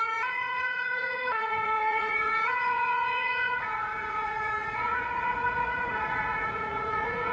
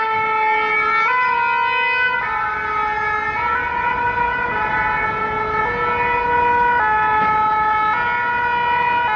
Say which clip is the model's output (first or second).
first